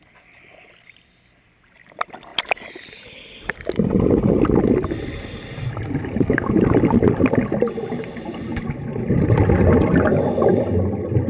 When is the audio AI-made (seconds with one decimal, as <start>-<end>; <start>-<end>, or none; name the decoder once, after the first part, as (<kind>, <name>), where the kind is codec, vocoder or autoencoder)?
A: none